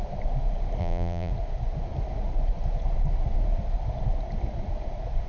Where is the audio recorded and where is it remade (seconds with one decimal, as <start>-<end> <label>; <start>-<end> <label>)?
0.0-0.8 recorded; 0.8-1.3 remade; 1.3-5.3 recorded